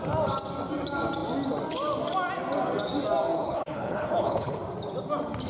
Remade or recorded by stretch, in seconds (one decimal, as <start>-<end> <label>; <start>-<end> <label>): 0.0-3.3 recorded; 3.3-4.6 remade; 4.6-5.5 recorded